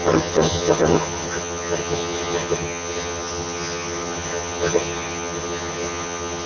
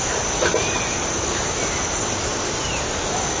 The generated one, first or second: first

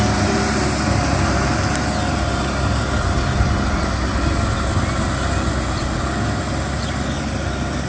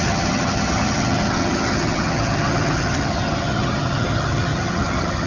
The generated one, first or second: second